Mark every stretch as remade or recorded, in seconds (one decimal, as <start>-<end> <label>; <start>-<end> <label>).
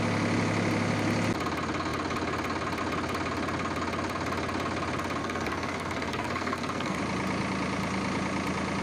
0.0-5.2 recorded; 5.2-7.0 remade; 7.0-8.8 recorded